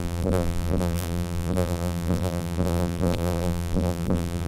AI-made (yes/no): yes